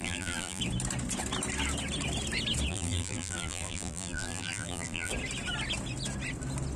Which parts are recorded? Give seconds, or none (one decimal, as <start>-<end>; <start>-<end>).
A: 0.6-2.7; 5.1-6.8